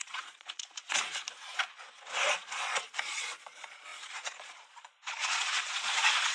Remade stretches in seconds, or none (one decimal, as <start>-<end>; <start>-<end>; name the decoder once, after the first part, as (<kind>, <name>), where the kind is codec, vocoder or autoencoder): 0.0-1.1 (vocoder, Vocos); 2.3-6.3